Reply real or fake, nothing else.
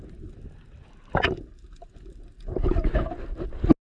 real